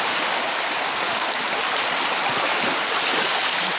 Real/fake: real